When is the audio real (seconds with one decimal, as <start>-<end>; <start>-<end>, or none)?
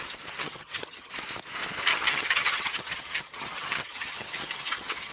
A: 0.0-0.4; 1.1-1.9